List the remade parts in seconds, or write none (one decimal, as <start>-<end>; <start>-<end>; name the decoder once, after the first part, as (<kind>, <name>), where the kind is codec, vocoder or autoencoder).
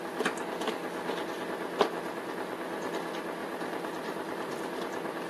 3.4-5.3 (vocoder, BigVGAN v2)